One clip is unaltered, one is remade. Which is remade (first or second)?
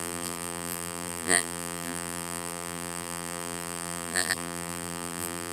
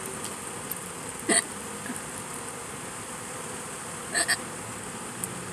first